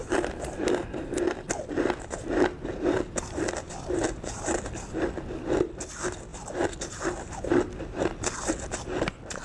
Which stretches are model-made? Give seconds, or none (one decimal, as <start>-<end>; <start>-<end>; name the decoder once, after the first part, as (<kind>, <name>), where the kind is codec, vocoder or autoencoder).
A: none